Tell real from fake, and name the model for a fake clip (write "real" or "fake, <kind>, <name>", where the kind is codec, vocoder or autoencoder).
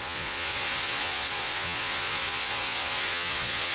fake, vocoder, Vocos